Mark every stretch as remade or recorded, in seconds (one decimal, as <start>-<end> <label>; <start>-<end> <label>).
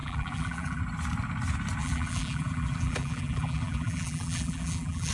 0.0-0.8 remade; 0.8-1.8 recorded; 1.8-5.1 remade